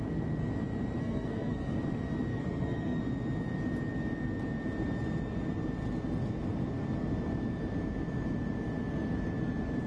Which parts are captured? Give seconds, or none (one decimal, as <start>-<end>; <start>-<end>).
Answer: 0.0-1.0; 1.8-2.3; 3.0-9.9